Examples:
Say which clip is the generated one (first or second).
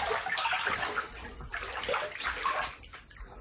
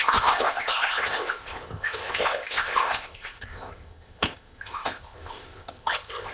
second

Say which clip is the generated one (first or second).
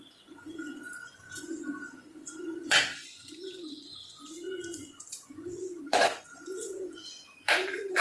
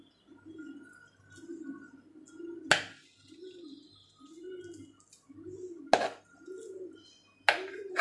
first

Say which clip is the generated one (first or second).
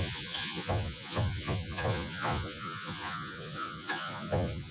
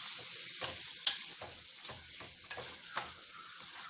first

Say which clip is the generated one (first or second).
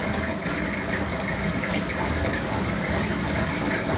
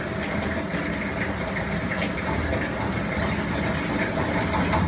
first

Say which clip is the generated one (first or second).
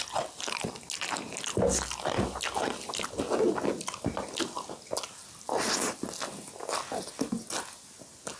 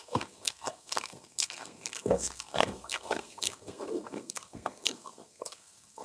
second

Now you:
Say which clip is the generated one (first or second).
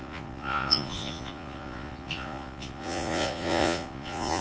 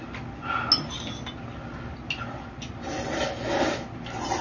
first